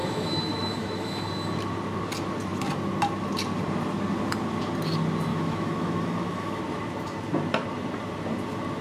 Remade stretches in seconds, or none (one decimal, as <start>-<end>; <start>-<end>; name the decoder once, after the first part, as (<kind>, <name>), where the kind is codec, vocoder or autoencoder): 0.0-1.2 (autoencoder, DAC-VAE); 5.3-6.6